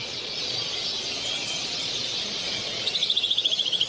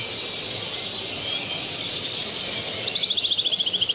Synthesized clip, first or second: first